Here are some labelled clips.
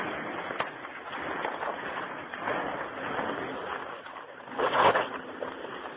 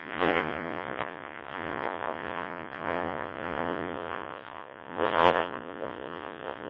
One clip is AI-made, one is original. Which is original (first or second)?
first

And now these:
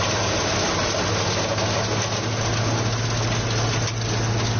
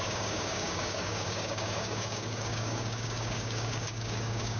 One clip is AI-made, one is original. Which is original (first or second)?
first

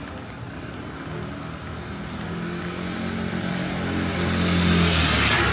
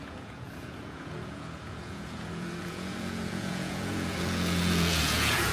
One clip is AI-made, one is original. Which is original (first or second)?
first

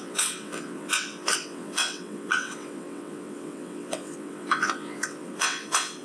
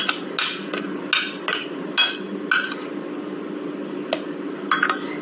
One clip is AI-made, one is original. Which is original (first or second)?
second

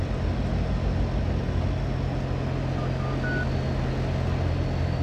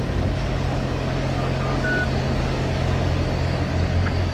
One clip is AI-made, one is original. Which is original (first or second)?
first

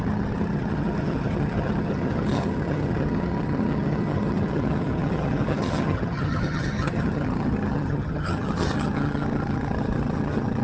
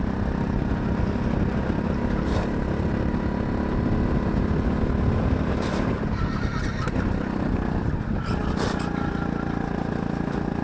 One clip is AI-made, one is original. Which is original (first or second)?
second